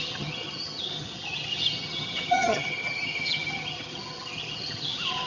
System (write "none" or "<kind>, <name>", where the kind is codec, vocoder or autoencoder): vocoder, HiFi-GAN